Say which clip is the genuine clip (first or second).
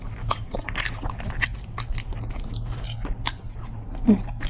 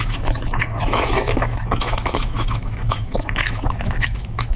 first